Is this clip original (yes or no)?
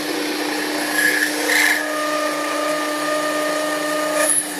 yes